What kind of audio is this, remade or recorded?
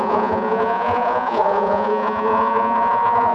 remade